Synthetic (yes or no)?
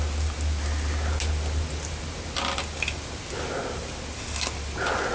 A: no